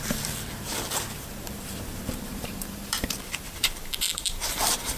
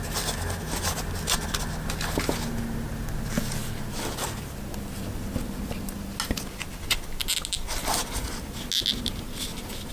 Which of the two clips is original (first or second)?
second